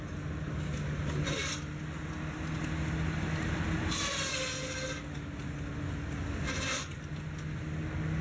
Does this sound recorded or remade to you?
recorded